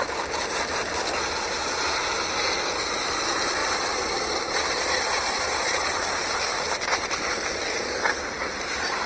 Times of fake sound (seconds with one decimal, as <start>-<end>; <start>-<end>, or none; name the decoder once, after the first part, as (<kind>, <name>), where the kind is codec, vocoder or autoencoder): 3.6-6.1 (vocoder, BigVGAN v2)